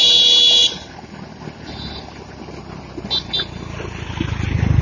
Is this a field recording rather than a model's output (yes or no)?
yes